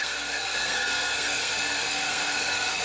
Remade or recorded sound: remade